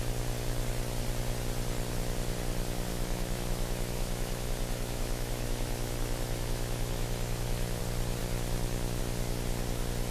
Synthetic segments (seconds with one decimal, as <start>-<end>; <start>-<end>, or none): 2.9-7.8; 8.2-9.0